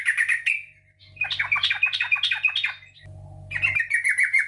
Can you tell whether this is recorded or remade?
recorded